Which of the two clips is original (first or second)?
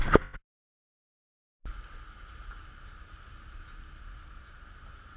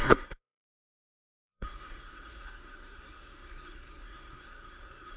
first